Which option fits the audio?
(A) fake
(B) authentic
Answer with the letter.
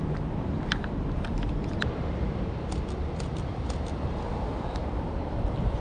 A